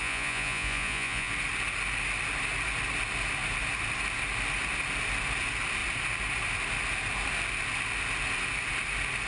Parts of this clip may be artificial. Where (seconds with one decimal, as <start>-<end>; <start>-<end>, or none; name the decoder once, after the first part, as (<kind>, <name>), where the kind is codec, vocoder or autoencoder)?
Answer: 0.0-1.3 (vocoder, Vocos)